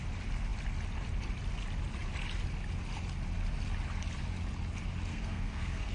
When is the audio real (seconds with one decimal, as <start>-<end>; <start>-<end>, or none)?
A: 0.0-5.1

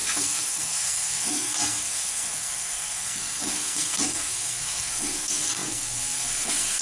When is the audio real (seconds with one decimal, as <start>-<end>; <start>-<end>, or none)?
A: none